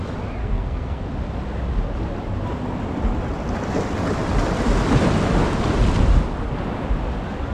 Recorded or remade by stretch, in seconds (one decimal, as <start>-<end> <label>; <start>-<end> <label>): 0.0-0.4 recorded; 0.4-1.0 remade; 1.0-7.5 recorded